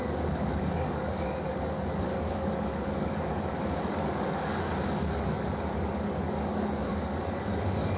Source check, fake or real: fake